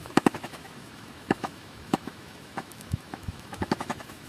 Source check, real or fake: fake